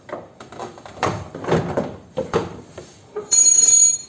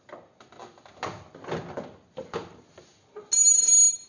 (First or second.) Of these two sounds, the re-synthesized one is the first